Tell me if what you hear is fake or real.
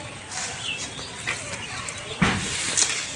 real